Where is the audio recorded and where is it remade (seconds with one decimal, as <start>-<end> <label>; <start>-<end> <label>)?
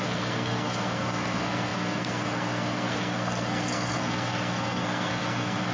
0.0-5.7 remade